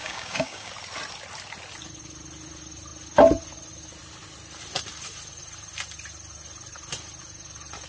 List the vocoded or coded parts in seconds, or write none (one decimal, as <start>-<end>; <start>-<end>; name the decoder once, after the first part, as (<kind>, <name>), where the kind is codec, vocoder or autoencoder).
0.0-0.7 (codec, DAC)